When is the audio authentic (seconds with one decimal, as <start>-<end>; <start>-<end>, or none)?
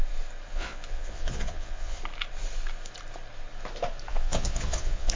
0.0-0.5; 2.0-4.1